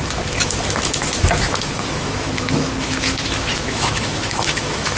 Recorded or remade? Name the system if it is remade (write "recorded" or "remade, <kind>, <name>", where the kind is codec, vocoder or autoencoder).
remade, autoencoder, DAC-VAE